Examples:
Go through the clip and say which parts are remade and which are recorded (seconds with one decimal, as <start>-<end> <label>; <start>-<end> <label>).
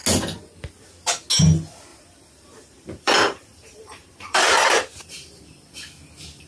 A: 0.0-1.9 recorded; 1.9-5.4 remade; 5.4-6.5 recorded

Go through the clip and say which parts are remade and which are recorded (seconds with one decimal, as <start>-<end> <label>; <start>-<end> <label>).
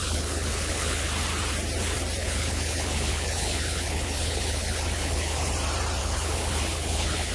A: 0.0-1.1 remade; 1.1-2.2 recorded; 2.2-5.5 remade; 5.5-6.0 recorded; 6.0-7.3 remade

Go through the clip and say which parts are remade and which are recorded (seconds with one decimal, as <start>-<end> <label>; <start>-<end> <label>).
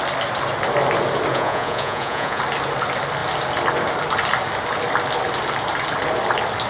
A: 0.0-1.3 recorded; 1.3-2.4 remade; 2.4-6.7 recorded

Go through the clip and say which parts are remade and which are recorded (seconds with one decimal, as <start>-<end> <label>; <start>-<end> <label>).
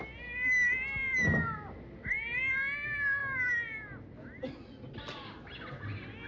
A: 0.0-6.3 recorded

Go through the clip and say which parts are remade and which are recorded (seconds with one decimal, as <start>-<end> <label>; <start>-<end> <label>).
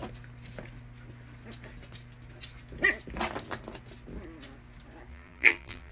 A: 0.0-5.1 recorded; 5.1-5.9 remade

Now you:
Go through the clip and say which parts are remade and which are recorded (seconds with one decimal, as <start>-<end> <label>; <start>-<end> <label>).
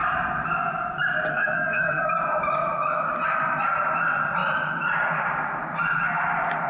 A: 0.0-1.3 recorded; 1.3-2.1 remade; 2.1-6.7 recorded